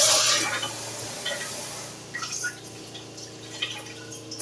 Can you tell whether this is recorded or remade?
recorded